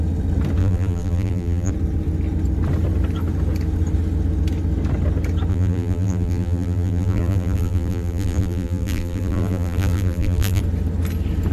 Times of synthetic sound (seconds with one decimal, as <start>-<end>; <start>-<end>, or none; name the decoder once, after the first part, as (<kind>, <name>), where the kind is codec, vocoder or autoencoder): 0.6-1.7 (vocoder, BigVGAN v2); 5.5-10.6